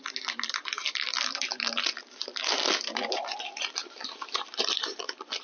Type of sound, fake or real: real